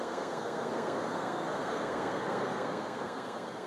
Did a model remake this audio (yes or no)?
yes